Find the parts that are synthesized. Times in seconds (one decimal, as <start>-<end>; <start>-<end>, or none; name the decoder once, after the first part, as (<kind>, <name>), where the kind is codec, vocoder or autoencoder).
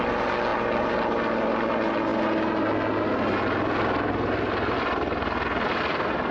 none